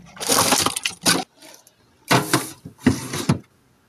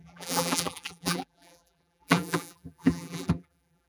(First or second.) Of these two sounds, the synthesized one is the second